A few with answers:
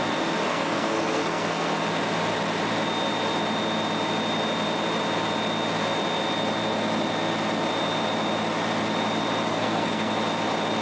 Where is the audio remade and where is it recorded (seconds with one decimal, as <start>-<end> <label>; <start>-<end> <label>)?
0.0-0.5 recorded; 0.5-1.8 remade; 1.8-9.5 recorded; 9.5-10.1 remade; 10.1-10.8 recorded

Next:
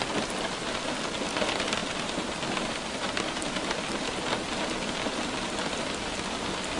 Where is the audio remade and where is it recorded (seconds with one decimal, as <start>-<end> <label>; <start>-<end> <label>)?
0.0-1.8 recorded; 1.8-4.0 remade; 4.0-6.8 recorded

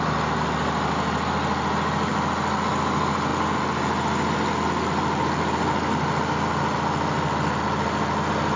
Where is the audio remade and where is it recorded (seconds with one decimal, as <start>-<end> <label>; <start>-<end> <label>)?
0.0-8.6 recorded